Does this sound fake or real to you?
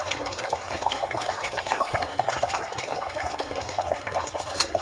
fake